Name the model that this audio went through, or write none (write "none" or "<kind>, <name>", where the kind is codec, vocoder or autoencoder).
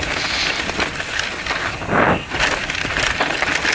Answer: none